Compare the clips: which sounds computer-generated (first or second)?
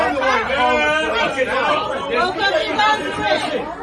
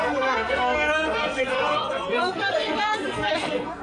second